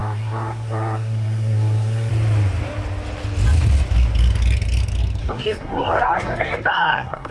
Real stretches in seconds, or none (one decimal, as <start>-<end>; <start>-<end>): 2.1-5.2

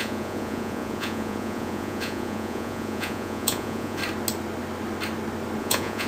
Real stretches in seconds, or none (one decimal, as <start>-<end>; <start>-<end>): 4.0-5.6

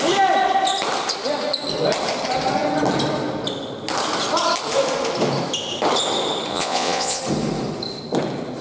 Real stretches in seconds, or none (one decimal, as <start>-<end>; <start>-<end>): 0.0-6.5; 7.2-8.6

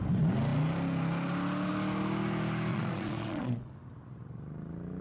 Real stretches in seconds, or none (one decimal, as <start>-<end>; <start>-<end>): 0.0-2.7; 3.7-5.0

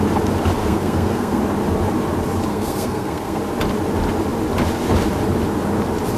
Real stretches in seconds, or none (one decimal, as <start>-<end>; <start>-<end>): 0.0-0.6; 1.4-2.5; 3.4-6.2

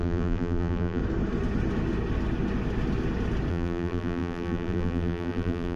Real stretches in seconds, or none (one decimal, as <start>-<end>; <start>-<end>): 1.0-3.5

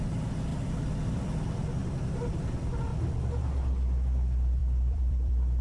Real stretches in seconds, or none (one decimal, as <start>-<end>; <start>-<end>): 0.0-0.5; 1.4-1.8; 2.3-2.9; 3.4-4.6